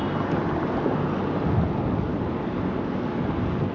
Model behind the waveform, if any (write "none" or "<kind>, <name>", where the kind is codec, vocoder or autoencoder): none